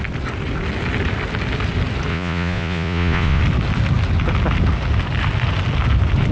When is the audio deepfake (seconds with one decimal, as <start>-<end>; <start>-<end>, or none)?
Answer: 2.1-3.4